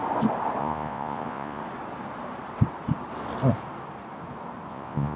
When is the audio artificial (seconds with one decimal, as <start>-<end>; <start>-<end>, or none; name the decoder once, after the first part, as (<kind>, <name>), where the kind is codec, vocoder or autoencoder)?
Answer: 0.6-1.6 (vocoder, Vocos); 4.7-5.2